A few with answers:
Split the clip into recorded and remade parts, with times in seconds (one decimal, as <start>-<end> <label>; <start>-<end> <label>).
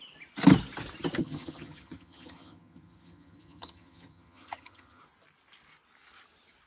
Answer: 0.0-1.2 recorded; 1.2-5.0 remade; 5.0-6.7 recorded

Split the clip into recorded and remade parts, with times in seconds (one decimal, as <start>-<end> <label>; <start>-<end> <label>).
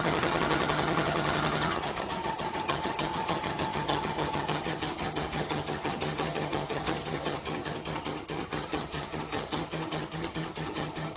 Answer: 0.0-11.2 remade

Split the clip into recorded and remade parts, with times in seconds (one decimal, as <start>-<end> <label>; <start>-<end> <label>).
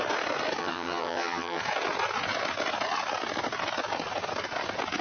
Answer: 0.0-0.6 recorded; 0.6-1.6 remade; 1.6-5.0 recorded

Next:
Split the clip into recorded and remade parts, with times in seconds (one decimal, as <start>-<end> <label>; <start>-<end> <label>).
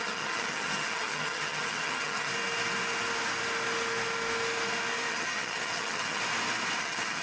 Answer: 0.0-2.3 remade; 2.3-5.1 recorded; 5.1-6.2 remade; 6.2-6.8 recorded; 6.8-7.2 remade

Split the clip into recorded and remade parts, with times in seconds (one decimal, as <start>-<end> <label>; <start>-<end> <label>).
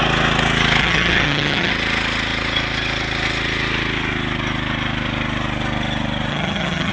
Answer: 0.0-0.8 recorded; 0.8-1.7 remade; 1.7-6.3 recorded; 6.3-6.9 remade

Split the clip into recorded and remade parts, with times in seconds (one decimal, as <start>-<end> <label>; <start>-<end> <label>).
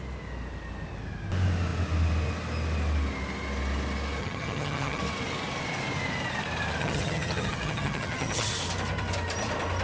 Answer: 0.0-4.2 recorded; 4.2-5.0 remade; 5.0-6.8 recorded; 6.8-8.5 remade; 8.5-9.8 recorded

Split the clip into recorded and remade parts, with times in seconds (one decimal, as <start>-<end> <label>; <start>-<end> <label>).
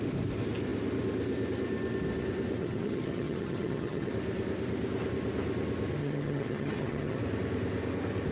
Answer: 0.0-2.6 recorded; 2.6-4.1 remade; 4.1-6.0 recorded; 6.0-7.2 remade; 7.2-8.3 recorded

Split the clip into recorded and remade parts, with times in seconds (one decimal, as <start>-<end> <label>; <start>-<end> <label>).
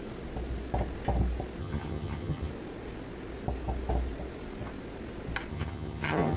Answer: 0.0-1.6 recorded; 1.6-2.5 remade; 2.5-5.5 recorded; 5.5-6.4 remade